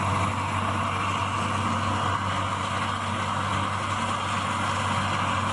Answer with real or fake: real